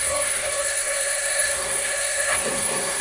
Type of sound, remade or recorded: remade